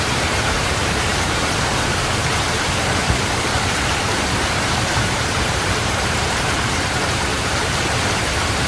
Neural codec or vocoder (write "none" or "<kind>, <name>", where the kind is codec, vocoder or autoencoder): vocoder, BigVGAN v2